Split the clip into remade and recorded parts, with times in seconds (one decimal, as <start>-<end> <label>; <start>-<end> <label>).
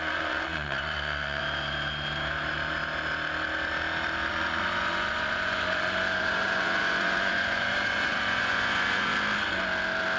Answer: 0.0-1.4 remade; 1.4-4.3 recorded; 4.3-9.1 remade; 9.1-10.2 recorded